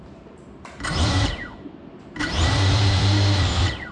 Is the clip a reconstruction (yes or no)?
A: yes